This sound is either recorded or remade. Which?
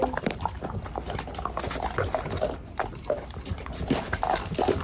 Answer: recorded